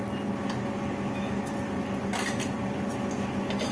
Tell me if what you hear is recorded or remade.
recorded